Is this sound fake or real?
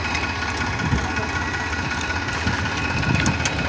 real